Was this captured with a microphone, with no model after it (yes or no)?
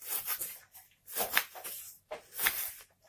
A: yes